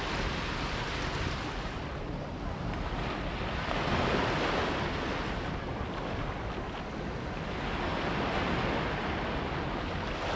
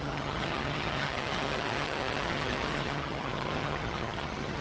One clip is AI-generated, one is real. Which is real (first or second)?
first